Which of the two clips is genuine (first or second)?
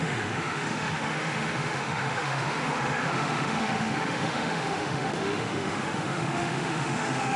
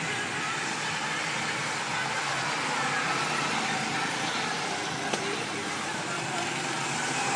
second